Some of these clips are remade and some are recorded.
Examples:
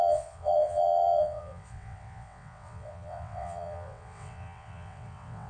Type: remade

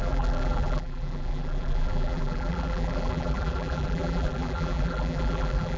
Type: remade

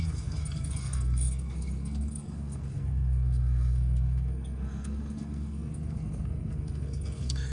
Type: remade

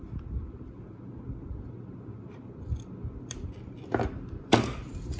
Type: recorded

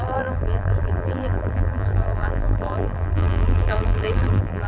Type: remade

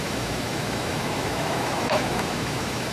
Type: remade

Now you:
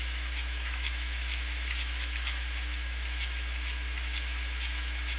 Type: remade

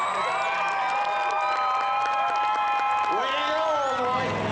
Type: recorded